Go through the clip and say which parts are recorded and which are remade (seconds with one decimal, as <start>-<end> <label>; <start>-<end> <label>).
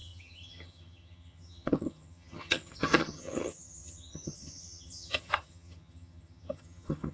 0.0-7.1 remade